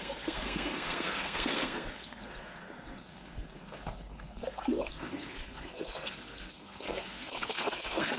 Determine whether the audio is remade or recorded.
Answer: remade